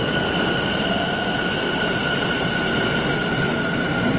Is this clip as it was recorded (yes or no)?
yes